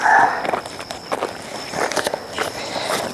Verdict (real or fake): real